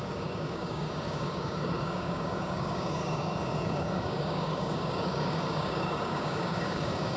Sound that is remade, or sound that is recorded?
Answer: remade